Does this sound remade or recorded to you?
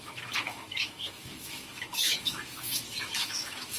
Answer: remade